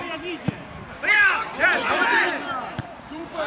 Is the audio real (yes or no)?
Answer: no